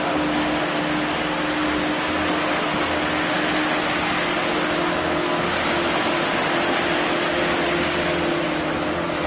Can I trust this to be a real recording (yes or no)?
yes